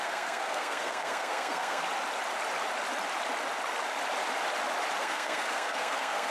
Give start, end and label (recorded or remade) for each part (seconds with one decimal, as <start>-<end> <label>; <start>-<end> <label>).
0.0-1.8 remade; 1.8-5.0 recorded; 5.0-6.3 remade